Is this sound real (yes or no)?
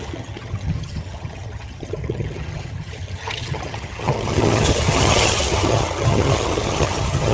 no